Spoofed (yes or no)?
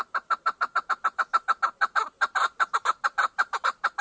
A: yes